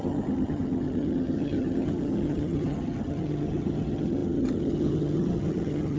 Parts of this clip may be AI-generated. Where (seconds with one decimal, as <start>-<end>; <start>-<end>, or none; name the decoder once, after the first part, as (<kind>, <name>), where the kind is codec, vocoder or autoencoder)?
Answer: 0.0-6.0 (vocoder, HiFi-GAN)